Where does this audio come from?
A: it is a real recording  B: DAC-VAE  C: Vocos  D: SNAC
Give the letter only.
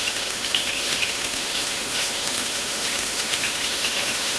B